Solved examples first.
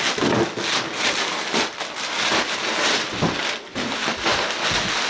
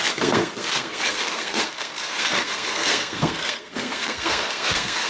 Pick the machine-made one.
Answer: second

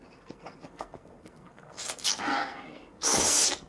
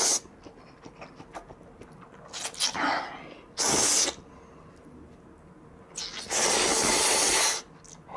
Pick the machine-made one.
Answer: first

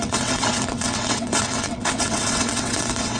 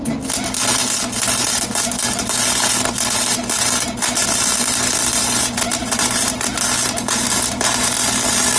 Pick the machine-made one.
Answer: first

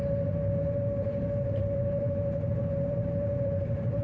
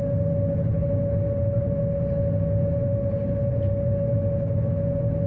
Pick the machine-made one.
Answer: first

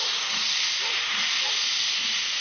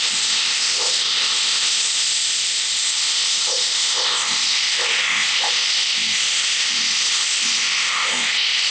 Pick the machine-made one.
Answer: second